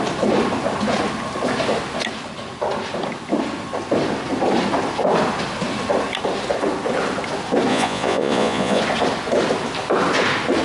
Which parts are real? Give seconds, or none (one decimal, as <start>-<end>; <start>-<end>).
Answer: 0.0-7.7; 8.8-10.6